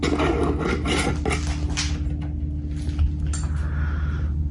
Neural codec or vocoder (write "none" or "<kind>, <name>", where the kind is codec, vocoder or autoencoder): none